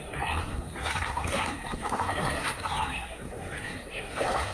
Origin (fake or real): fake